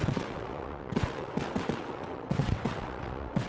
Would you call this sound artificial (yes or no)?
yes